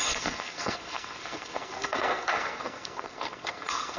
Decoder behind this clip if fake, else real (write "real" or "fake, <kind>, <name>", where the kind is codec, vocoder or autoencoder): fake, codec, SNAC